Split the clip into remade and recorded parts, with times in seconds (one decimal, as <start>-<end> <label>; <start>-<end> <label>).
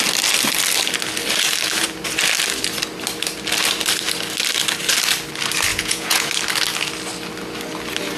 0.0-5.7 recorded; 5.7-6.3 remade; 6.3-8.2 recorded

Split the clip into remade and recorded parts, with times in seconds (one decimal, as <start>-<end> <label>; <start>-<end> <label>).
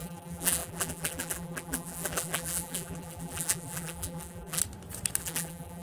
0.0-4.6 remade; 4.6-5.2 recorded; 5.2-5.8 remade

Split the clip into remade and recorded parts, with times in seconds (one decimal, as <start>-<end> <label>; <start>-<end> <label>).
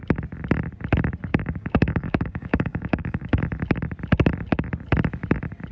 0.0-1.3 recorded; 1.3-3.4 remade; 3.4-5.7 recorded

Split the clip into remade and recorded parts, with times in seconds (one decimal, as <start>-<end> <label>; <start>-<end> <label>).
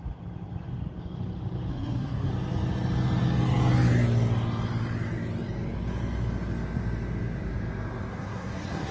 0.0-1.7 recorded; 1.7-2.3 remade; 2.3-8.1 recorded; 8.1-8.9 remade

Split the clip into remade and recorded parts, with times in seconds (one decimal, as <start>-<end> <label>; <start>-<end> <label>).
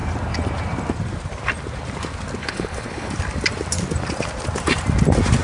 0.0-2.4 recorded; 2.4-3.1 remade; 3.1-5.4 recorded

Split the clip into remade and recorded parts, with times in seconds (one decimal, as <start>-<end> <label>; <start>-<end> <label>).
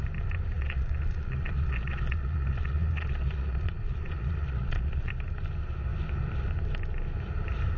0.0-0.5 recorded; 0.5-5.1 remade; 5.1-7.8 recorded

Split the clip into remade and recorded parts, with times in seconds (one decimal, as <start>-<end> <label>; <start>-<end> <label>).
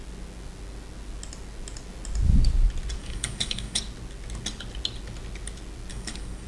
0.0-3.0 recorded; 3.0-3.8 remade; 3.8-5.9 recorded; 5.9-6.5 remade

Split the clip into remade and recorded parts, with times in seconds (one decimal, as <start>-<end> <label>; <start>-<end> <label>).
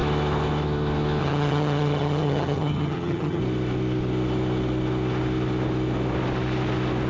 0.0-1.2 recorded; 1.2-3.4 remade; 3.4-7.1 recorded